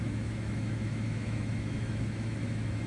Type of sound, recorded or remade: remade